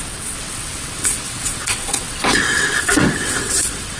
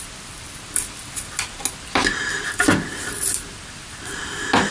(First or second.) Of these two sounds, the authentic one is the second